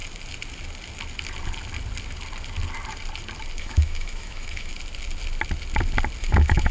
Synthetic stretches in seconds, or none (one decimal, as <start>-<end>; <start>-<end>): 3.6-4.7; 6.2-6.7